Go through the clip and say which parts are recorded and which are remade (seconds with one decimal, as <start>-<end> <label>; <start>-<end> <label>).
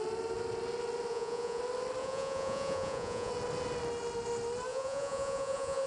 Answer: 0.0-1.1 recorded; 1.1-1.6 remade; 1.6-2.0 recorded; 2.0-3.3 remade; 3.3-4.7 recorded; 4.7-5.9 remade